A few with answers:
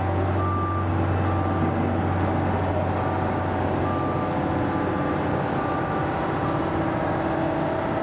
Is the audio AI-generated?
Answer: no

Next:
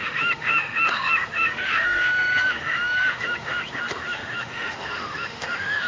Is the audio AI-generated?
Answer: yes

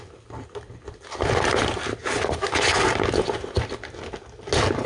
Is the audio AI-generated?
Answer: no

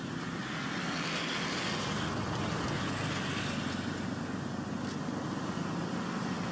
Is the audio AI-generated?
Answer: no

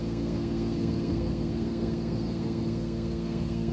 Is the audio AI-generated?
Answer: yes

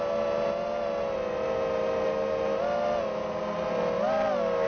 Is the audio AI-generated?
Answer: no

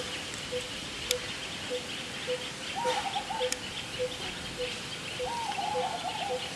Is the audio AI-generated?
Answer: no